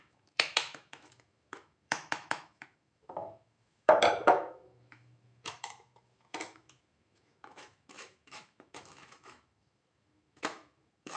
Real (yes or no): no